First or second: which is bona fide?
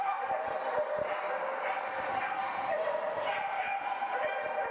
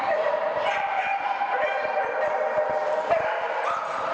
first